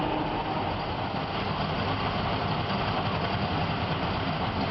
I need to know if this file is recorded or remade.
recorded